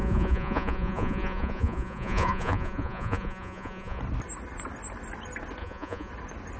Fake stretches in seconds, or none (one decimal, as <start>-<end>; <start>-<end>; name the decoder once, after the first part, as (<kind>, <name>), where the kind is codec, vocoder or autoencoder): 0.0-4.0 (vocoder, Vocos); 5.6-6.1